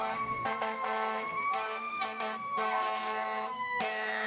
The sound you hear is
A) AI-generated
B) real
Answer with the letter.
A